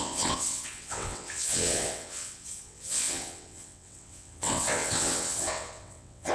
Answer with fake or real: fake